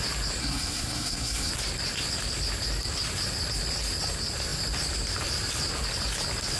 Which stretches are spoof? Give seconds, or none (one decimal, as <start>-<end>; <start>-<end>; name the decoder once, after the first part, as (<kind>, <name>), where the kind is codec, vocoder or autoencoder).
0.4-1.5 (codec, SNAC)